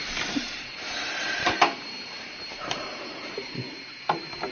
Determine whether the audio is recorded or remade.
remade